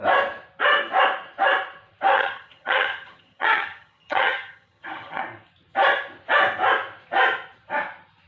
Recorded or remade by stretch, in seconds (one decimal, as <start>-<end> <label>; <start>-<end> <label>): 0.0-2.1 recorded; 2.1-5.2 remade; 5.2-8.3 recorded